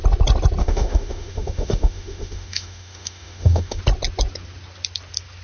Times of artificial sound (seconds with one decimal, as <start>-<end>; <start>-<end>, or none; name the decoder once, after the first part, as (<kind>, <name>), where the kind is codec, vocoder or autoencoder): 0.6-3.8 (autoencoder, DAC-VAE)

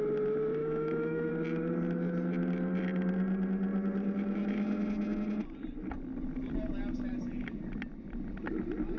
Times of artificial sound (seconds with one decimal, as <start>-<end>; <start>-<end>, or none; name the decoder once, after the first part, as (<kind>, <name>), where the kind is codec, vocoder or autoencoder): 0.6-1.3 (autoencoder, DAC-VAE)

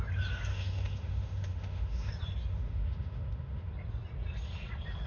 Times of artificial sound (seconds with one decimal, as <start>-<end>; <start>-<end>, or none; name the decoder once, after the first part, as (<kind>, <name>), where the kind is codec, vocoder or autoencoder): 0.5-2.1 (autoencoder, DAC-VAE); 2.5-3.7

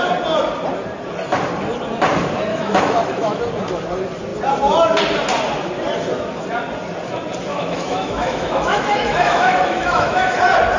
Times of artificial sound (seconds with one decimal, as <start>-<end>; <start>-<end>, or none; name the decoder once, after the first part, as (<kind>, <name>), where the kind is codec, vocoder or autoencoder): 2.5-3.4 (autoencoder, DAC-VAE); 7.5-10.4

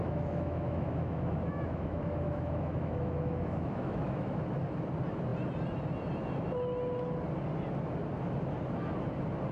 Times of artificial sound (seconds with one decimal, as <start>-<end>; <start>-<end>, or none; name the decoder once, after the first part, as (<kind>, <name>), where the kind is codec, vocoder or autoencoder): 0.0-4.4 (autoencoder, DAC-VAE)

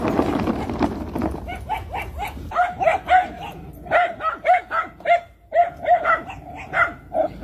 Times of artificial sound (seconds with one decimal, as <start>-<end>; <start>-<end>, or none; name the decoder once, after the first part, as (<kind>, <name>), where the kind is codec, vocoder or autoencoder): none

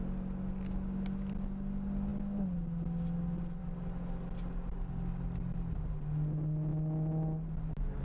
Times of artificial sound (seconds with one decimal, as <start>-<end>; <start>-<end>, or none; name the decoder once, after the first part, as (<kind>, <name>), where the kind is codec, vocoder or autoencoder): none